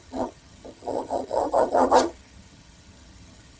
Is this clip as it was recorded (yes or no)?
no